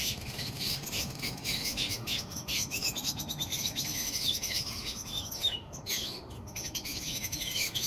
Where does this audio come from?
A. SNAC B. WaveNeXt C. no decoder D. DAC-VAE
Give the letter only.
D